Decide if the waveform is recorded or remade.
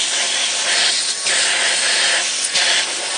recorded